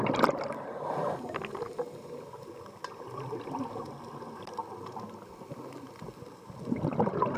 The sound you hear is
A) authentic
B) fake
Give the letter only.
A